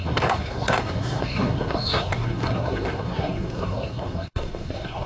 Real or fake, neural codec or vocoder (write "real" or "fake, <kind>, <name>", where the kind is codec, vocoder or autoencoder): fake, codec, SNAC